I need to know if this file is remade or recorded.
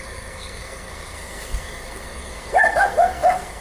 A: remade